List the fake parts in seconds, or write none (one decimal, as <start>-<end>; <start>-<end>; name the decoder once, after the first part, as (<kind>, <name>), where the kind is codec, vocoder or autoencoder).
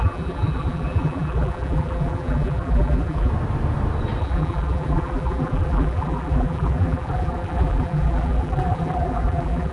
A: 0.0-3.3 (vocoder, BigVGAN v2); 4.2-9.7